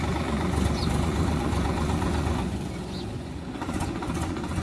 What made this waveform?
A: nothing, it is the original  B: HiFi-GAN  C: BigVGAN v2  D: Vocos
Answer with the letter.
D